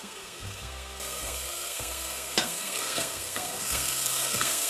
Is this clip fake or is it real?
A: fake